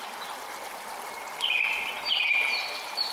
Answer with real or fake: real